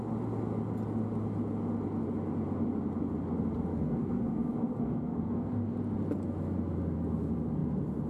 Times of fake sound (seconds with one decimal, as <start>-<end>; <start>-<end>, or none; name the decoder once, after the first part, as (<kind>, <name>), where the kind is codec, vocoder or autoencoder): 3.7-5.5 (codec, SNAC)